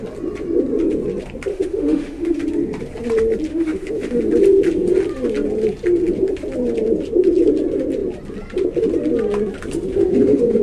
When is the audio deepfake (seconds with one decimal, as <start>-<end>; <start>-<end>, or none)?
1.5-2.4; 3.5-4.2; 9.9-10.6